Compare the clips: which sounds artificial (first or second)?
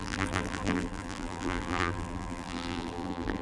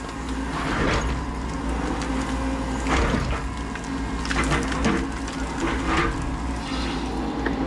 first